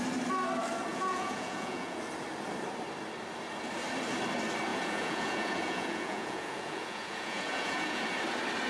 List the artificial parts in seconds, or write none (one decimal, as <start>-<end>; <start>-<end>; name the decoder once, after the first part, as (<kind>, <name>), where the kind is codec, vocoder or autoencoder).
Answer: 0.9-2.0 (vocoder, Vocos); 4.7-8.0